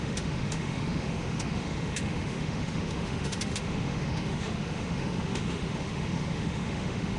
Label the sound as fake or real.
fake